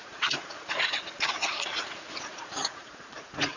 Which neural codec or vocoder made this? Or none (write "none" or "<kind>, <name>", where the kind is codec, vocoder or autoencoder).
vocoder, Vocos